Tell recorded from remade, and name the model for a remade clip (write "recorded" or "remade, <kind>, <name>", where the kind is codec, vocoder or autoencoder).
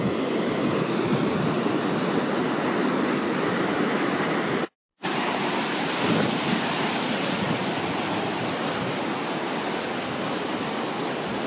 recorded